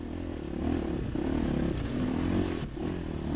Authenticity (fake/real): real